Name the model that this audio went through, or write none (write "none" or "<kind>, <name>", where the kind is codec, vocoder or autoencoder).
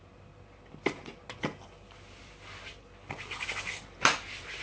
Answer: none